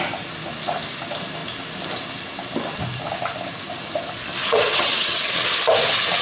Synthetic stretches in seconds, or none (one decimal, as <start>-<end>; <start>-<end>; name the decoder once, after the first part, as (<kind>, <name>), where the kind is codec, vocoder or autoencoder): 4.4-6.2 (vocoder, WaveNeXt)

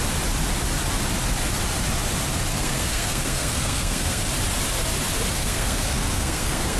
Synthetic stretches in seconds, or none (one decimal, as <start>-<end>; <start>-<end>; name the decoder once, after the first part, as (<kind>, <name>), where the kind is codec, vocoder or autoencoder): 2.5-4.2 (codec, SNAC); 5.4-6.8

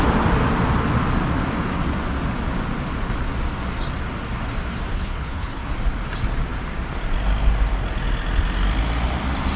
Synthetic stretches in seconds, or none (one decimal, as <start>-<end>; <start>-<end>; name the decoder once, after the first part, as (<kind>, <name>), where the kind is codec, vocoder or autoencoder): 4.9-5.7 (codec, HILCodec)